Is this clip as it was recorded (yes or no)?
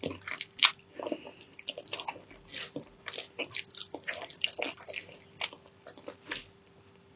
yes